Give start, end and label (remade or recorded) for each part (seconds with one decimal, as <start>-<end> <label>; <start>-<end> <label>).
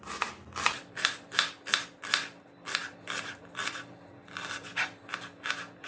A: 0.0-5.9 recorded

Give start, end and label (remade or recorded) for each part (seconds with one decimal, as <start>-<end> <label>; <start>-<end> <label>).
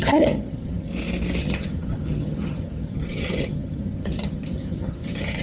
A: 0.0-0.9 remade; 0.9-1.4 recorded; 1.4-5.4 remade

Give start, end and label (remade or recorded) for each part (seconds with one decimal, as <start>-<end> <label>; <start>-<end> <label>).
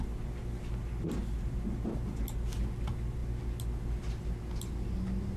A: 0.0-5.4 recorded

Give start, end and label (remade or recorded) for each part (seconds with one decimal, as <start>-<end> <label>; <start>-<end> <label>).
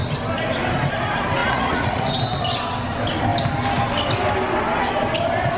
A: 0.0-1.4 recorded; 1.4-2.1 remade; 2.1-5.6 recorded